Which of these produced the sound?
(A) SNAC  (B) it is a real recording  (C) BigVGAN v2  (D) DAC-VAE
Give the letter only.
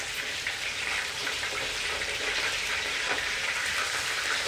C